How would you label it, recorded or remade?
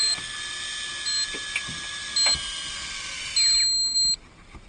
recorded